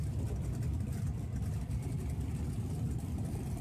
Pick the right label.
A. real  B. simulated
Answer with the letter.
B